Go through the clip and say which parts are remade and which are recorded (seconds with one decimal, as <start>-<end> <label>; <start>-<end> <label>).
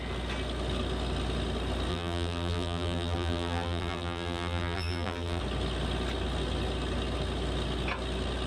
0.0-1.9 recorded; 1.9-5.4 remade; 5.4-8.5 recorded